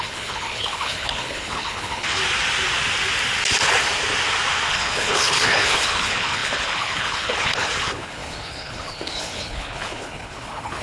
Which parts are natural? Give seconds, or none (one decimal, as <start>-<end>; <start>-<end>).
2.2-4.7